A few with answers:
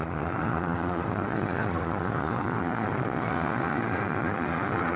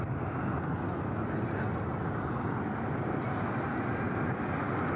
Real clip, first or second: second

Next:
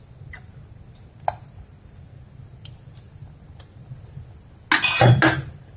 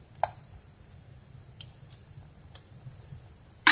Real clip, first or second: first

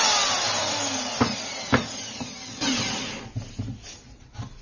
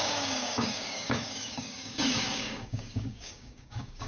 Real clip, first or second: first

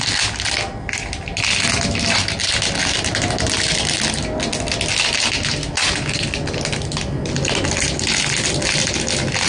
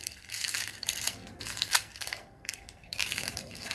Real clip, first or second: first